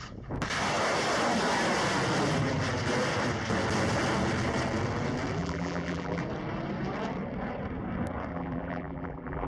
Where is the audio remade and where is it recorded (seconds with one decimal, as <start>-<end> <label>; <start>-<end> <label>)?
0.0-5.4 recorded; 5.4-6.2 remade; 6.2-8.3 recorded; 8.3-9.5 remade